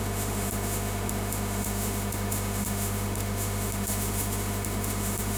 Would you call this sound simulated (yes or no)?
yes